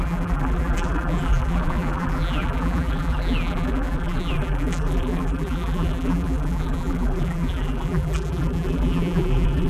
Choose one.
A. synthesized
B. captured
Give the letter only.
A